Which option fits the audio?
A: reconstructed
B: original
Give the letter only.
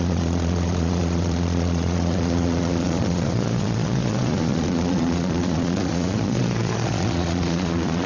A